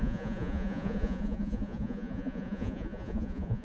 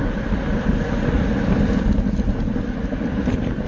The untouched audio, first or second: second